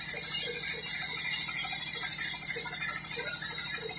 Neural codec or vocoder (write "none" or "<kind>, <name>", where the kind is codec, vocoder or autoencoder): none